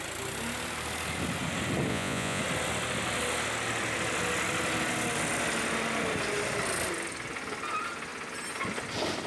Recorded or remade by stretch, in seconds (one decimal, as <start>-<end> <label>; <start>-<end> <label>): 0.0-1.9 recorded; 1.9-2.4 remade; 2.4-9.3 recorded

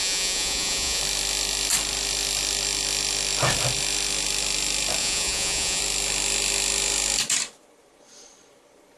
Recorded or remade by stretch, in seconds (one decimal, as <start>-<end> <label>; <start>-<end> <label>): 0.0-1.0 remade; 1.0-5.0 recorded; 5.0-5.8 remade; 5.8-9.0 recorded

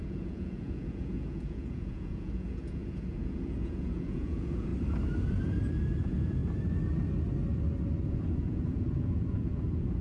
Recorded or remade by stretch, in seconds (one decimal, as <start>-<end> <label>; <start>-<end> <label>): 0.0-4.7 remade; 4.7-6.0 recorded; 6.0-6.4 remade; 6.4-8.1 recorded; 8.1-10.0 remade

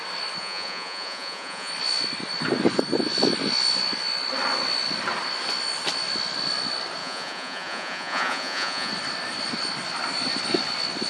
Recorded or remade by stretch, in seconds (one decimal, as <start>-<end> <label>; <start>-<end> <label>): 0.0-0.4 recorded; 0.4-1.7 remade; 1.7-7.0 recorded; 7.0-8.9 remade; 8.9-11.1 recorded

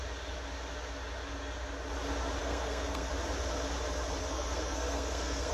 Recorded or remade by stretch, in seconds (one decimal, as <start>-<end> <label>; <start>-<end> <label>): 0.0-2.4 recorded; 2.4-3.1 remade; 3.1-4.2 recorded; 4.2-5.5 remade

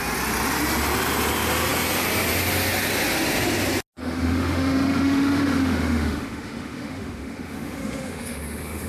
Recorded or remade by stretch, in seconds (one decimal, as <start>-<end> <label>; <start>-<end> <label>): 0.0-4.0 recorded; 4.0-8.9 remade

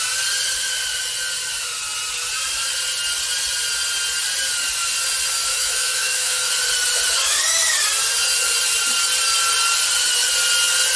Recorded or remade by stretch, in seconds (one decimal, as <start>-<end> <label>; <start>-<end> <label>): 0.0-5.5 recorded; 5.5-6.5 remade; 6.5-11.0 recorded